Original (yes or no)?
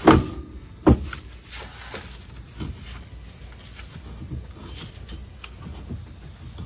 yes